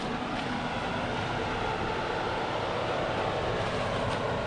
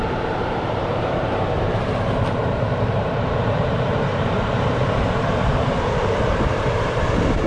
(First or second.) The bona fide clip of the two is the first